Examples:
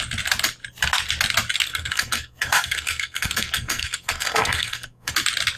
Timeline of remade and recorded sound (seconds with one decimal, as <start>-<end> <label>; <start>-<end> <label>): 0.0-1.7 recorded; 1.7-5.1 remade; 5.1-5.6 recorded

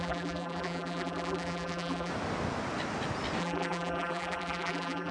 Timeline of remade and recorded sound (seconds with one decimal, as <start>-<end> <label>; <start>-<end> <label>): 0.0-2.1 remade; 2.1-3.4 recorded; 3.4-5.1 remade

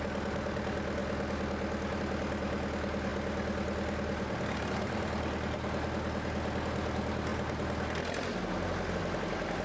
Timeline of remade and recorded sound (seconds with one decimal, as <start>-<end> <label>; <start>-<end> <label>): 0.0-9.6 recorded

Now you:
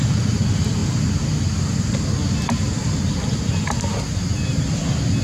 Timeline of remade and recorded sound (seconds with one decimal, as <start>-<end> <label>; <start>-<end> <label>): 0.0-5.2 recorded

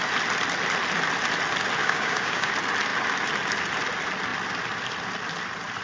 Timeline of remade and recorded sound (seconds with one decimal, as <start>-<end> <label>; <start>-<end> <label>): 0.0-1.8 recorded; 1.8-2.5 remade; 2.5-5.8 recorded